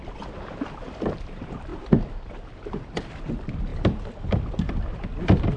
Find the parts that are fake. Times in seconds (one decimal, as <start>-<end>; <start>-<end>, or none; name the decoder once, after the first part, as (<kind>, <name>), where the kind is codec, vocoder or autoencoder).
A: 0.0-3.7 (vocoder, BigVGAN v2); 4.3-5.6